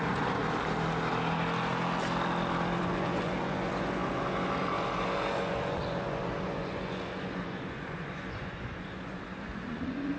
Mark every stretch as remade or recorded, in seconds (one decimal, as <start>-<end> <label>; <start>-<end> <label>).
0.0-0.4 remade; 0.4-2.8 recorded; 2.8-10.2 remade